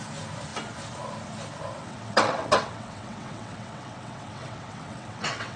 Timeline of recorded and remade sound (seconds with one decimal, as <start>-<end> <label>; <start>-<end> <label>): 0.0-1.8 recorded; 1.8-5.6 remade